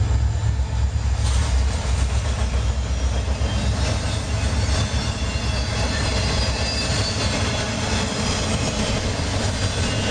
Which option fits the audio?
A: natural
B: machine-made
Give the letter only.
A